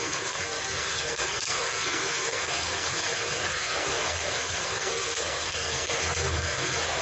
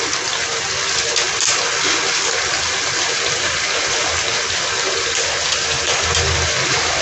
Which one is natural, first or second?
second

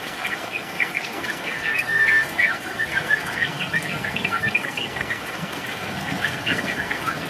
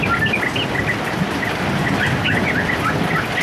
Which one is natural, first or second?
second